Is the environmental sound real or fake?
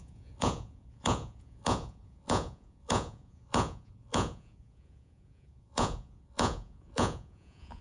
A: fake